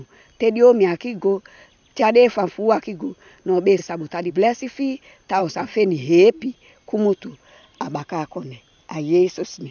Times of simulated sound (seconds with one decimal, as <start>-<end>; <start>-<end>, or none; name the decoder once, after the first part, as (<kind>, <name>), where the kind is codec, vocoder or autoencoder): none